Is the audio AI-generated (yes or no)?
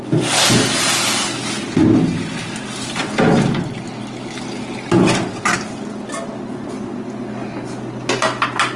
no